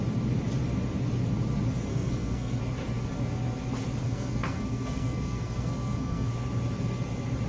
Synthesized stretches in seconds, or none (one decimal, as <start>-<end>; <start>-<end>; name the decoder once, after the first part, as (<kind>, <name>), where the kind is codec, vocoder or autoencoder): 1.9-2.6 (codec, SNAC); 4.0-6.3